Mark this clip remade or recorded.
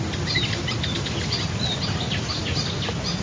recorded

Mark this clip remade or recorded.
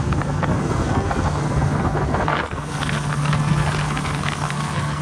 remade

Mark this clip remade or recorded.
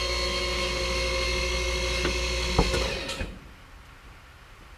recorded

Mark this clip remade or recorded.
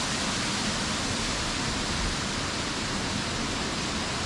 recorded